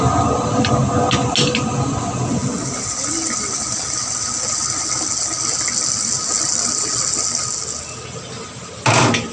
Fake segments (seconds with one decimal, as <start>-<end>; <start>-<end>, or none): none